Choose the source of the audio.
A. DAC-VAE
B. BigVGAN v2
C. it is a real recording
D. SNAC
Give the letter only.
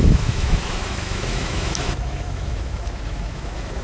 A